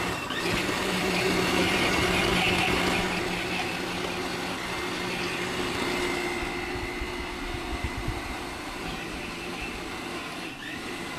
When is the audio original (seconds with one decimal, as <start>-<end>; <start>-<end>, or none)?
2.3-7.4